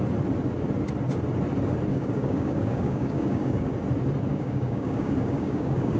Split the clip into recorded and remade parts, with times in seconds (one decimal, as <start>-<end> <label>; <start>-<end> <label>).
0.0-1.9 recorded; 1.9-3.7 remade; 3.7-4.3 recorded; 4.3-6.0 remade